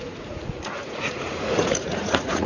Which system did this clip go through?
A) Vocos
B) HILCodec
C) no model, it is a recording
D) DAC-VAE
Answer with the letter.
A